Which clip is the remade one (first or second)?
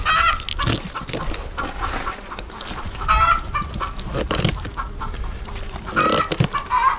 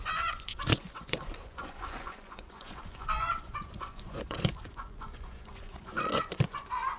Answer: second